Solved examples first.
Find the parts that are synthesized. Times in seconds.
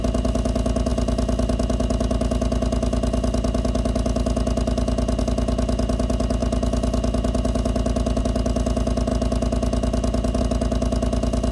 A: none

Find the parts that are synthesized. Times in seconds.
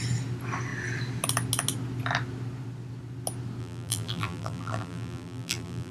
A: 3.6-5.9 (vocoder, BigVGAN v2)